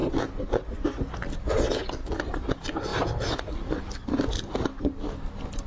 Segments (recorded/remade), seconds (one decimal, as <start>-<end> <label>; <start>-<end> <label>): 0.0-5.7 recorded